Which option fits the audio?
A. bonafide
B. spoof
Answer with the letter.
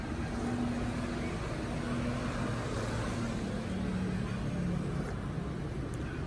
A